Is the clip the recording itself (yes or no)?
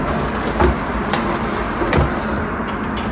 yes